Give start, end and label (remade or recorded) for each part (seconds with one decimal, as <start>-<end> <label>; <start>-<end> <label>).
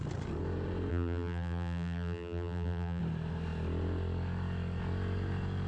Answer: 0.0-0.9 recorded; 0.9-3.0 remade; 3.0-5.7 recorded